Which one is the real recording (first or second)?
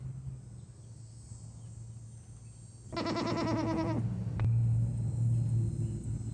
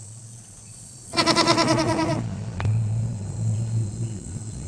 first